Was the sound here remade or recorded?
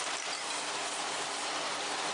recorded